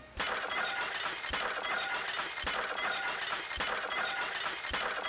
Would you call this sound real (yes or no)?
yes